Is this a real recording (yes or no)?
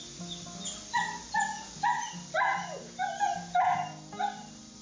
yes